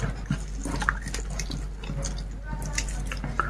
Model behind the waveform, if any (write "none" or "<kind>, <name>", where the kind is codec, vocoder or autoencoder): none